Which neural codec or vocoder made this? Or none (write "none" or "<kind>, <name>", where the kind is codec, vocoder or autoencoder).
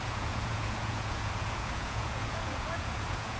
vocoder, Vocos